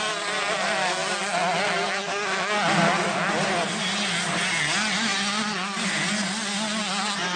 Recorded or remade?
recorded